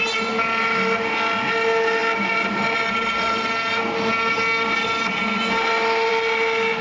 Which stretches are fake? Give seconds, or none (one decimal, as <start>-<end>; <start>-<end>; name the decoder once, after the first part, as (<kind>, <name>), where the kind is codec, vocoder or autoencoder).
none